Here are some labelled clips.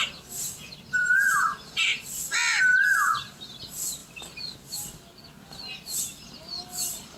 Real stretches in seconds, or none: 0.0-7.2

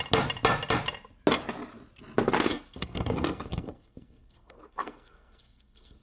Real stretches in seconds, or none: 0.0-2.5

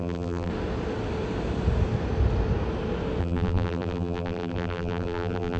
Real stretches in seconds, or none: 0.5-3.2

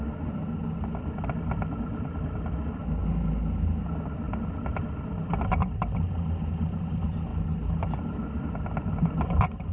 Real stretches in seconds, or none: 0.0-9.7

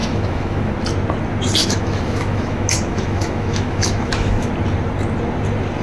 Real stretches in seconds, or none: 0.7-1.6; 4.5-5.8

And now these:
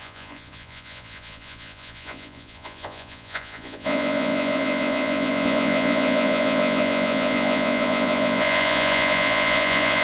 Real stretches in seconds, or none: none